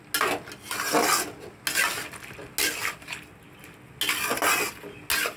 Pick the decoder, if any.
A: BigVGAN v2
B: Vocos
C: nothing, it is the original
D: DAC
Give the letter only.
C